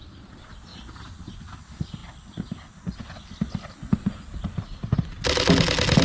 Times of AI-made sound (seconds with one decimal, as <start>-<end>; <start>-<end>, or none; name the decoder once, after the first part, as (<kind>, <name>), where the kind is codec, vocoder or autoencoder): none